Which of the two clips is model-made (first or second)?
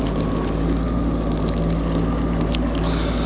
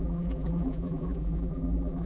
second